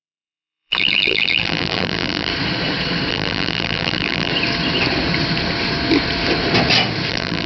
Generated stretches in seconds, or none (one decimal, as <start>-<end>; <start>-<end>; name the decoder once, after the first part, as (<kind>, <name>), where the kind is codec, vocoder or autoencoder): 0.0-2.3 (vocoder, BigVGAN v2); 3.1-4.3; 7.1-7.5